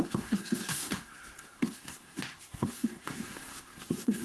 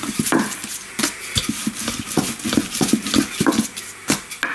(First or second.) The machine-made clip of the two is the first